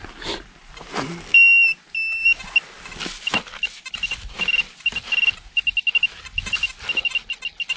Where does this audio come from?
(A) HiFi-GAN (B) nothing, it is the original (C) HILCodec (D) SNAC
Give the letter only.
B